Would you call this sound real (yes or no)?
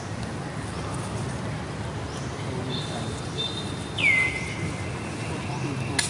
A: yes